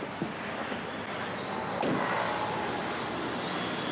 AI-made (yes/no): no